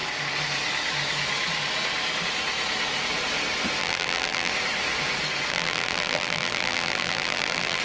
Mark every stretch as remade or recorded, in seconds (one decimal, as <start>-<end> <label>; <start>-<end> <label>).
0.0-3.8 recorded; 3.8-4.5 remade; 4.5-5.5 recorded; 5.5-7.8 remade